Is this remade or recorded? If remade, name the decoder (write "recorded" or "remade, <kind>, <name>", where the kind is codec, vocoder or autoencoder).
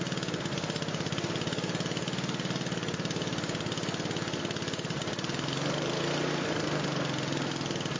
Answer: recorded